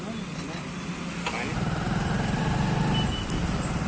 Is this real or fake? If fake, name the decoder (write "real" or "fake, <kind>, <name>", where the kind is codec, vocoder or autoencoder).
real